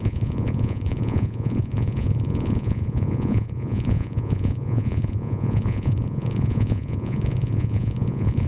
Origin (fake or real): fake